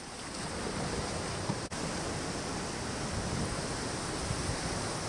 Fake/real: real